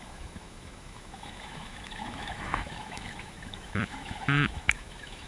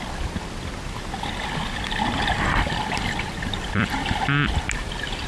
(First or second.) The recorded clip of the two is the second